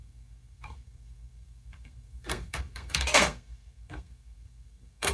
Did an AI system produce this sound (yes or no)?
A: yes